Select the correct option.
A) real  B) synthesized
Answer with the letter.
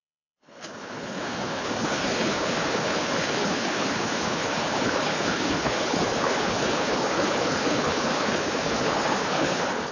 B